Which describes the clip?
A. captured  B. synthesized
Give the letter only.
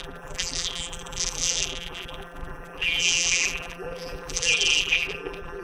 B